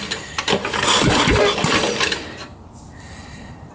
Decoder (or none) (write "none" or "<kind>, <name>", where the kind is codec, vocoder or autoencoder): vocoder, BigVGAN v2